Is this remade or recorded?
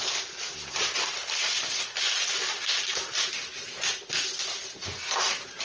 recorded